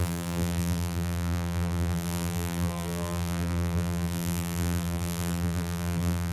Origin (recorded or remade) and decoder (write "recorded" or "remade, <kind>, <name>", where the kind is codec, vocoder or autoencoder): remade, vocoder, BigVGAN v2